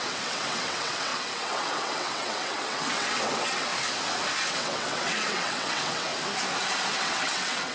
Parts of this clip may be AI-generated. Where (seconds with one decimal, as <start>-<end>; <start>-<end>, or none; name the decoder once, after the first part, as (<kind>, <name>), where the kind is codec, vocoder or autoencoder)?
0.0-3.7 (vocoder, WaveNeXt); 4.5-6.1; 6.9-7.7

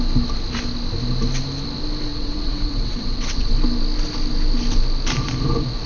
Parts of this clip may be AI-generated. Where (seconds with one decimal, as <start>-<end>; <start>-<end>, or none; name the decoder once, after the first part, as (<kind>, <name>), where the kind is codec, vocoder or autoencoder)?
2.1-3.5 (vocoder, WaveNeXt)

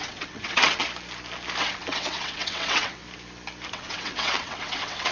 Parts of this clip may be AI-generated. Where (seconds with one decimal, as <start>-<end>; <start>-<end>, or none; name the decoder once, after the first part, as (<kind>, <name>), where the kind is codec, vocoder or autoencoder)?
0.0-0.8 (vocoder, WaveNeXt); 1.6-3.0; 3.7-5.1

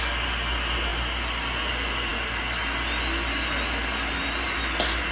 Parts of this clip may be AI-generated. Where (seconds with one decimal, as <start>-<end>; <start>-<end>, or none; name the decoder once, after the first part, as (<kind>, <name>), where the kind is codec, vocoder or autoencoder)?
none

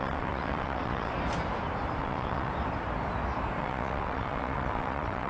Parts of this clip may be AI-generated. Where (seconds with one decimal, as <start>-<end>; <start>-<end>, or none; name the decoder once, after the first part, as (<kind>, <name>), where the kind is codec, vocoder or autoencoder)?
0.0-1.1 (vocoder, WaveNeXt); 2.0-2.5; 3.6-5.3